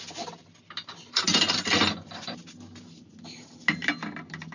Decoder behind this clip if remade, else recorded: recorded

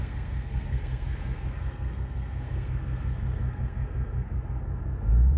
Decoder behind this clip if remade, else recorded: remade, codec, SNAC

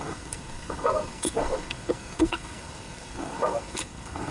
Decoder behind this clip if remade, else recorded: remade, codec, SNAC